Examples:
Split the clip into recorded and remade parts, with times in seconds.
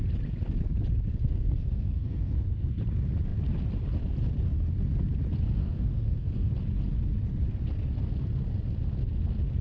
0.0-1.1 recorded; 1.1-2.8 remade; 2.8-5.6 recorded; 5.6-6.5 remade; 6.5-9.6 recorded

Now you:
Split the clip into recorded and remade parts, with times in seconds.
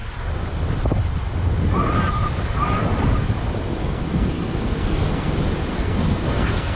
0.0-3.8 recorded; 3.8-5.3 remade; 5.3-5.7 recorded; 5.7-6.8 remade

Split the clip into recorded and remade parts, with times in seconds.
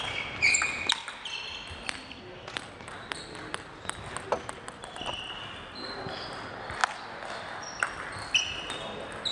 0.0-9.3 recorded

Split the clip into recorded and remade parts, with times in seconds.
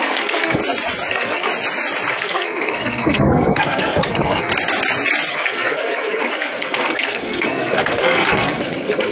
0.0-0.6 remade; 0.6-1.1 recorded; 1.1-1.5 remade; 1.5-2.1 recorded; 2.1-4.5 remade; 4.5-5.3 recorded; 5.3-9.1 remade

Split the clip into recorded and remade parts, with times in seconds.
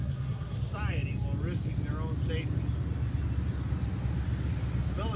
0.0-0.6 remade; 0.6-5.2 recorded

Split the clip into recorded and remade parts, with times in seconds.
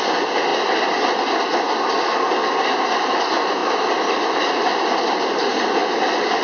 0.0-6.4 recorded